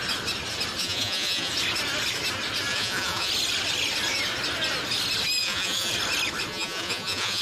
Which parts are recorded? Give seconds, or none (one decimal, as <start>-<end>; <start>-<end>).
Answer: 0.0-0.8; 1.5-2.7; 3.3-5.4; 5.9-6.5